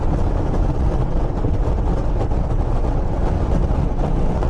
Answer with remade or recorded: remade